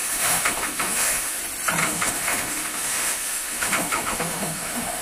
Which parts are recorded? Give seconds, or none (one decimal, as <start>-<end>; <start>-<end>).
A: 1.4-1.8